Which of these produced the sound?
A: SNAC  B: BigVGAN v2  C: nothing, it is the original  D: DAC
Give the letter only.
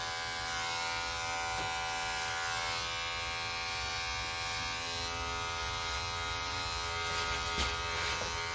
C